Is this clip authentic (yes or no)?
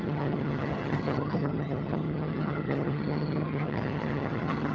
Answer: no